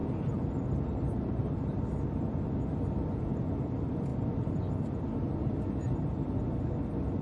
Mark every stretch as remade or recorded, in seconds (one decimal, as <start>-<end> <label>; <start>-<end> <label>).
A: 0.0-1.4 remade; 1.4-4.1 recorded; 4.1-4.6 remade; 4.6-7.2 recorded